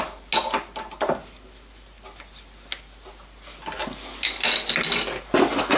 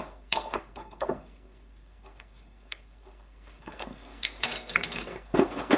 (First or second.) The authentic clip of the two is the first